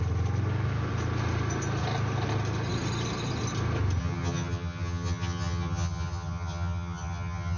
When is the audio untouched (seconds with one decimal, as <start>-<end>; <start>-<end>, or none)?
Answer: 0.0-4.0